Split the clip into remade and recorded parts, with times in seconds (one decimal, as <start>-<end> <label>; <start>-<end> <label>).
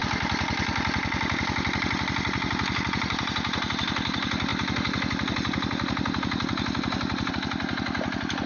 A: 0.0-8.5 recorded